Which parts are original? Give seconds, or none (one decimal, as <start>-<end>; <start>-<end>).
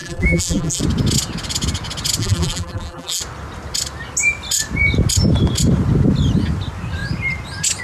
0.8-2.2; 3.2-7.8